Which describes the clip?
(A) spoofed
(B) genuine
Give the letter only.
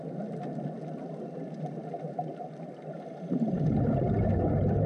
B